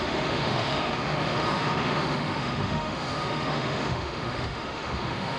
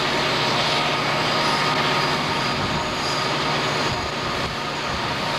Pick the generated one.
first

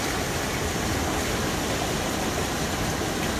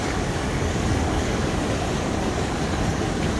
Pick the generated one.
second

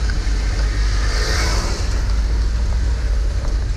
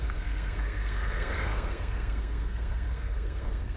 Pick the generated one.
second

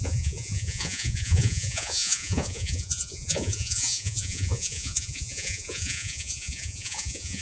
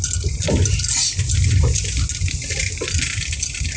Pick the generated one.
first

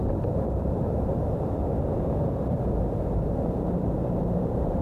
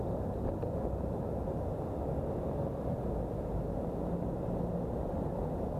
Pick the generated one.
first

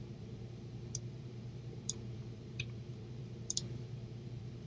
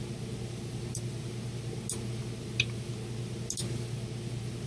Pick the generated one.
first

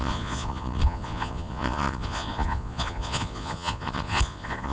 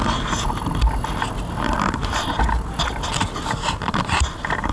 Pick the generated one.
first